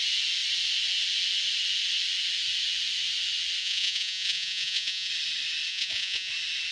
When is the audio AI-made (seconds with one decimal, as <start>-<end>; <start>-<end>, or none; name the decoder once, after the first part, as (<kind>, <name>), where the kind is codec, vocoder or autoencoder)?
3.6-5.1 (vocoder, Vocos); 5.7-6.3